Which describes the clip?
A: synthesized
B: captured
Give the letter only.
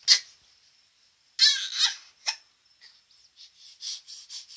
B